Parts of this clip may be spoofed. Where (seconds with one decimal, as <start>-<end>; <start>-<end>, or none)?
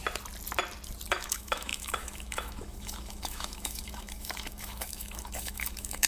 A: 1.1-6.1